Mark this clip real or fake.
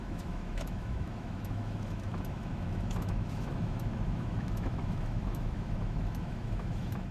fake